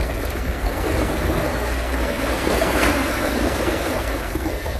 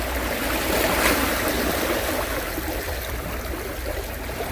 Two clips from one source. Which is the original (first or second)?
second